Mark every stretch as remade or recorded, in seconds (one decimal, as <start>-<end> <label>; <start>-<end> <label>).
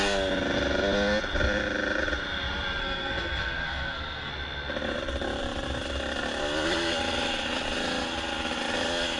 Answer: 0.0-2.8 recorded; 2.8-4.3 remade; 4.3-9.2 recorded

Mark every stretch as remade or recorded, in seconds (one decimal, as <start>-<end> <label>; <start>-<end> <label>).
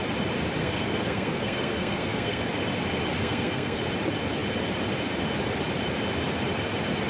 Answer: 0.0-0.6 recorded; 0.6-2.4 remade; 2.4-3.2 recorded; 3.2-3.8 remade; 3.8-7.1 recorded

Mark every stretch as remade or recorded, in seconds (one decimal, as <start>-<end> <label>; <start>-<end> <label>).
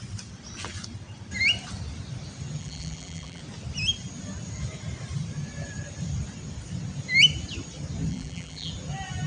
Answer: 0.0-2.6 recorded; 2.6-3.4 remade; 3.4-8.1 recorded; 8.1-8.7 remade; 8.7-9.3 recorded